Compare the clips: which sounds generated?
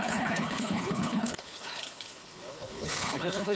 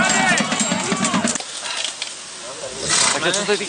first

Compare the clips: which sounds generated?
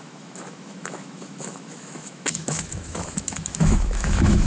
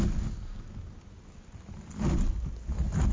first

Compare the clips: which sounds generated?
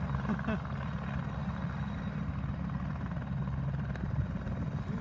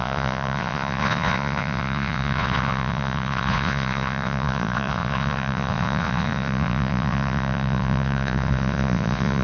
second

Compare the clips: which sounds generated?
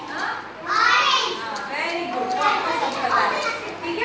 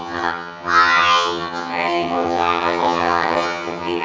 second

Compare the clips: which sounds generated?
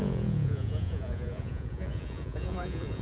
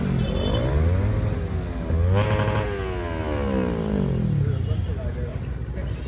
first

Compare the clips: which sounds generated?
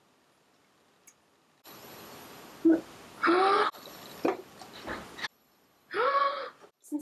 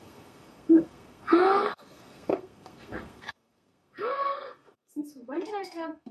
second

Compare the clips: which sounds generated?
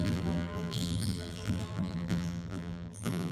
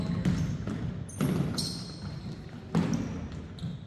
first